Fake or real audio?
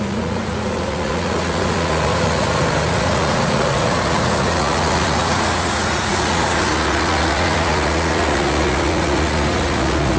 fake